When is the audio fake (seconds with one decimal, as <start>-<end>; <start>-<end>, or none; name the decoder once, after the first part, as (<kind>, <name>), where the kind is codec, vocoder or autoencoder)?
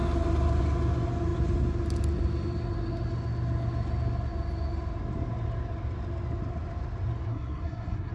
7.3-8.1 (codec, SNAC)